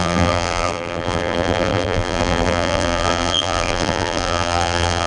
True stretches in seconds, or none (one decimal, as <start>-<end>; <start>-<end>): none